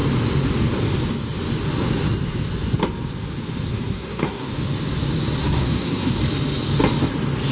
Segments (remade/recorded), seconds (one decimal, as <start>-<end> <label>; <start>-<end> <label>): 0.0-3.7 recorded; 3.7-4.5 remade; 4.5-5.4 recorded; 5.4-6.2 remade; 6.2-7.5 recorded